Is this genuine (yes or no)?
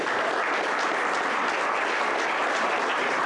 yes